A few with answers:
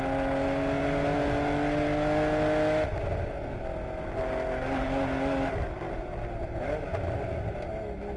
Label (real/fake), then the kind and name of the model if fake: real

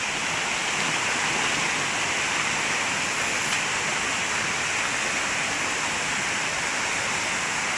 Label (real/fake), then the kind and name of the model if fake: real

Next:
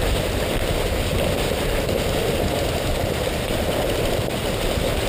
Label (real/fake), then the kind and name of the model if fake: real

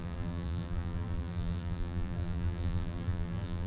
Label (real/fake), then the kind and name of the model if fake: fake, vocoder, BigVGAN v2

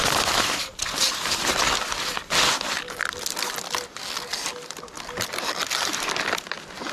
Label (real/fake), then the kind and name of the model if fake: real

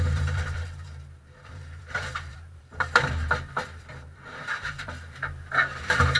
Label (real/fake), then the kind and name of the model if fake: fake, vocoder, BigVGAN v2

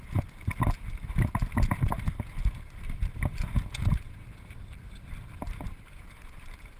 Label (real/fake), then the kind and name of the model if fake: fake, vocoder, BigVGAN v2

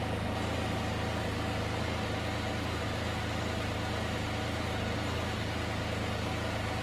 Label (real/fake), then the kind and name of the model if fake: real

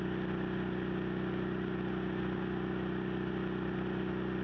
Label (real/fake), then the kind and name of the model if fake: real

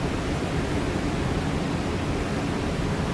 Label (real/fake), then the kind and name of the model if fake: real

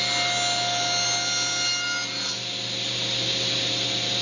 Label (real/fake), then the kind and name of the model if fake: real